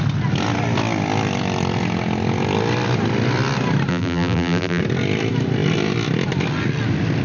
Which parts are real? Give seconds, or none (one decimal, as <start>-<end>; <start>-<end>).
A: 0.0-3.9; 4.8-7.2